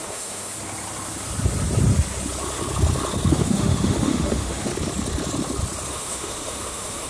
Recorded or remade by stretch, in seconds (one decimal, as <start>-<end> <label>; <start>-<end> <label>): 0.0-0.5 remade; 0.5-3.3 recorded; 3.3-4.7 remade; 4.7-5.9 recorded; 5.9-7.1 remade